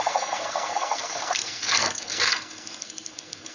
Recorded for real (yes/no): no